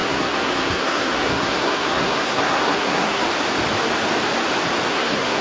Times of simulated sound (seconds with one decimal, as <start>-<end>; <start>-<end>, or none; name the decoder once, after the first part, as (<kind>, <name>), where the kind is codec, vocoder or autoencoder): 0.0-3.2 (codec, SNAC); 4.9-5.4